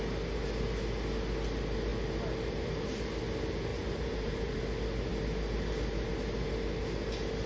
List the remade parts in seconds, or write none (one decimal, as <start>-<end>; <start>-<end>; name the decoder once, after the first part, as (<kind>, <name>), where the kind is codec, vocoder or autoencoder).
3.7-4.6 (vocoder, BigVGAN v2)